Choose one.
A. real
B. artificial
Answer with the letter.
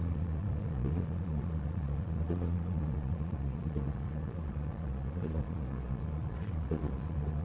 B